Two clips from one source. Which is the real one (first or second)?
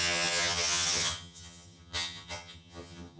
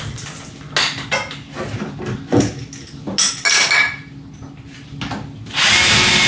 second